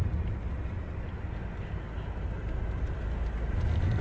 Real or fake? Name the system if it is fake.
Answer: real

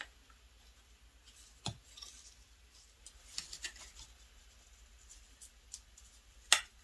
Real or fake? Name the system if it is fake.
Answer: real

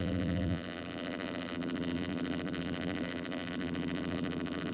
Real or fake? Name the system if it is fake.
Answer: fake, vocoder, BigVGAN v2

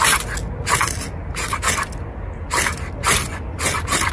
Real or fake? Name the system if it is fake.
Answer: real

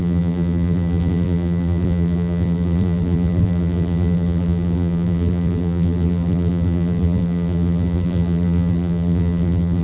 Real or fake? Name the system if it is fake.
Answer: fake, vocoder, BigVGAN v2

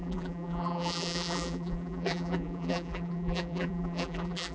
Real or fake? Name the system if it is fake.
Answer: fake, vocoder, BigVGAN v2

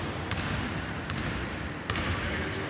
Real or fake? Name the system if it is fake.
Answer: real